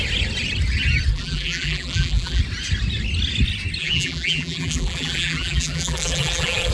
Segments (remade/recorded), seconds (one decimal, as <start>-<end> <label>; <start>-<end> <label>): 0.0-1.1 recorded; 1.1-2.4 remade; 2.4-3.8 recorded; 3.8-6.7 remade